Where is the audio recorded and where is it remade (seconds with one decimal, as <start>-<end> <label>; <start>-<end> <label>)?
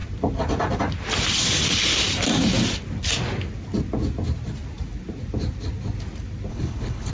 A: 0.0-6.5 recorded; 6.5-7.1 remade